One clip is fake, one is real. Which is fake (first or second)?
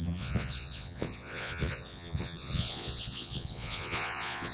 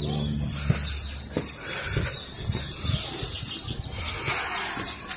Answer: first